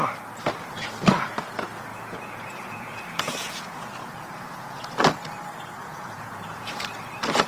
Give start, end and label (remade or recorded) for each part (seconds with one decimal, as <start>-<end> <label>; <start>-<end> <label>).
0.0-1.9 recorded; 1.9-4.8 remade; 4.8-5.8 recorded; 5.8-6.8 remade; 6.8-7.5 recorded